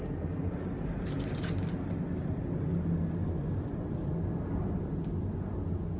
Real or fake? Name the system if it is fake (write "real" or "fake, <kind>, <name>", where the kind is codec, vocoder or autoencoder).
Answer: real